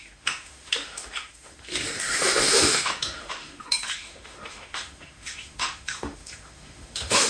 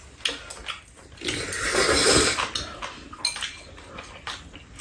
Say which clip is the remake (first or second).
first